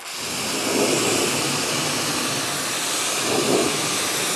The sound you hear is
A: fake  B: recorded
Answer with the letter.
B